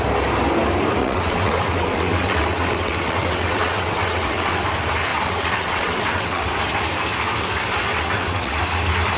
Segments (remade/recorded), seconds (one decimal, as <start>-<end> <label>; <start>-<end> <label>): 0.0-1.0 recorded; 1.0-4.6 remade; 4.6-5.1 recorded; 5.1-6.5 remade; 6.5-7.9 recorded; 7.9-8.6 remade; 8.6-9.2 recorded